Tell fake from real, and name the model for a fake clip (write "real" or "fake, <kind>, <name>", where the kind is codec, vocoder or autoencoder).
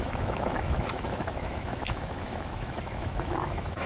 fake, autoencoder, DAC-VAE